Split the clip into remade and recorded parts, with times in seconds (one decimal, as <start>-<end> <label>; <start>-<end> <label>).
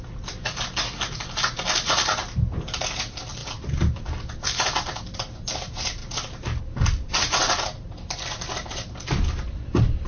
0.0-10.1 recorded